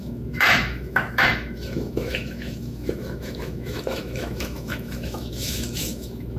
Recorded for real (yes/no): no